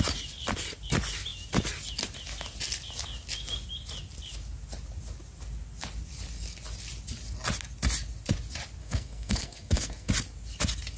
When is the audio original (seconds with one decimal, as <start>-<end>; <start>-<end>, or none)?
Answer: 0.0-8.8; 10.1-11.0